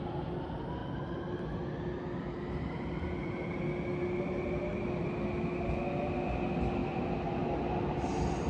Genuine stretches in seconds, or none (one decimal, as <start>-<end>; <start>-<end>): 0.0-8.5